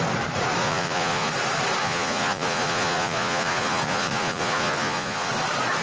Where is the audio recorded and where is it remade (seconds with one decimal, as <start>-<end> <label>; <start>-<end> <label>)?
0.0-0.6 recorded; 0.6-1.3 remade; 1.3-1.8 recorded; 1.8-5.3 remade; 5.3-5.8 recorded